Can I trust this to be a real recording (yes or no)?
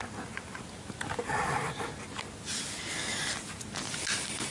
yes